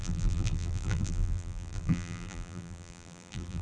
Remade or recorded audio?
remade